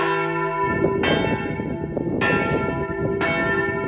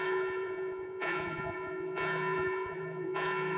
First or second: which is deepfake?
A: second